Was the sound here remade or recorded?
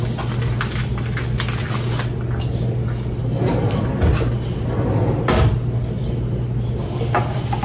recorded